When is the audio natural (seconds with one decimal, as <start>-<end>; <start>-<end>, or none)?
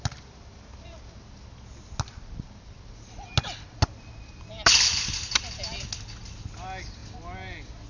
0.0-7.9